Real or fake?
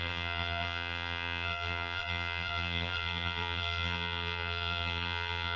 fake